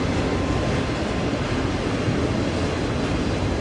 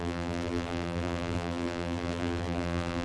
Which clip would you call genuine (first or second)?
first